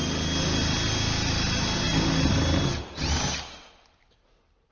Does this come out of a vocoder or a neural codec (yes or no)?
no